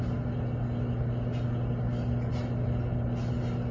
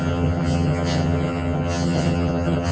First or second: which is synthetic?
second